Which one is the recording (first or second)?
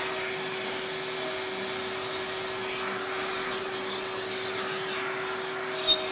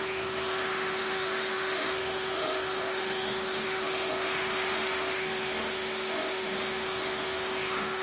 first